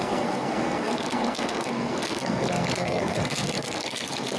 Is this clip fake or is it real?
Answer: fake